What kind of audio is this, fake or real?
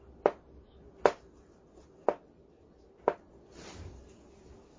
real